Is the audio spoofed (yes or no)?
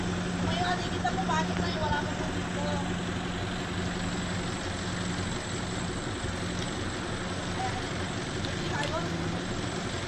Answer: no